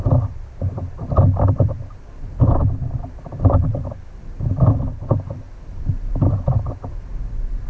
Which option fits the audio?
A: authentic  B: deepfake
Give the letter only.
B